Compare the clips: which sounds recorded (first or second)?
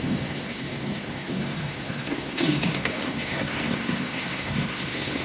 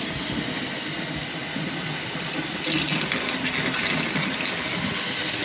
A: second